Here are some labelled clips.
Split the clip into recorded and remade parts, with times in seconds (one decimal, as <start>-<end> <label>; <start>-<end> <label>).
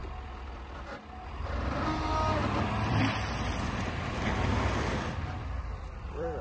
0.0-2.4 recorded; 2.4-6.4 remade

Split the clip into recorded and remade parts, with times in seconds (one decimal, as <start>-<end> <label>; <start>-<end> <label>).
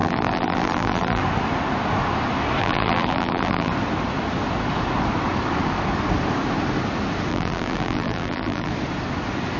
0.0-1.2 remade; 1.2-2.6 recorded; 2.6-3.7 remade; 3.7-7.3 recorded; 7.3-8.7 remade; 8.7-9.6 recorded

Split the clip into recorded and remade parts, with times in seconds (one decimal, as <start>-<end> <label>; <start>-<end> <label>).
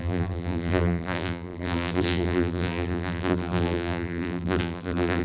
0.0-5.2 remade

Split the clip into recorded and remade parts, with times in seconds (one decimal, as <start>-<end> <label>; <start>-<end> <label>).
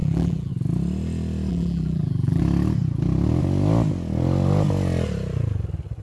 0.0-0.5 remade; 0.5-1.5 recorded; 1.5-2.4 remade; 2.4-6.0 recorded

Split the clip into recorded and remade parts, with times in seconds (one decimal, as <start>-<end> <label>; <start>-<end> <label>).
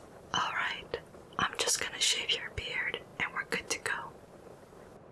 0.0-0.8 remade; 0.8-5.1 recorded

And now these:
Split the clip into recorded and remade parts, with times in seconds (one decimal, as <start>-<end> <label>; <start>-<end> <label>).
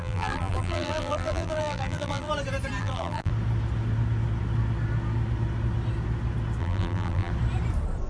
0.0-2.3 remade; 2.3-2.8 recorded; 2.8-3.3 remade; 3.3-6.6 recorded; 6.6-7.3 remade; 7.3-8.1 recorded